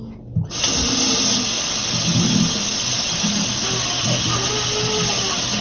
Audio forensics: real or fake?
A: real